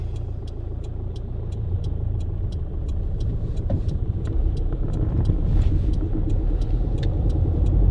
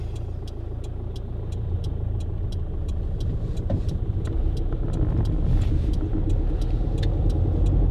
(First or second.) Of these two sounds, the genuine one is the second